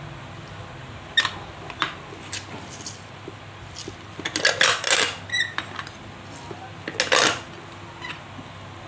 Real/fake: real